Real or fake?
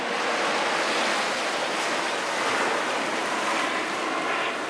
real